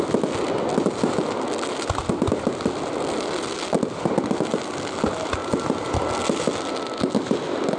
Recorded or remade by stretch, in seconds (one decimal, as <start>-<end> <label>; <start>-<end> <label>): 0.0-7.8 recorded